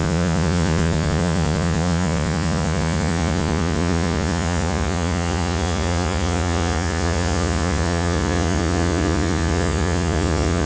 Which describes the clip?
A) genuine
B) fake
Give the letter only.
B